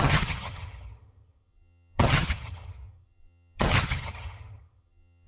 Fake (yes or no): yes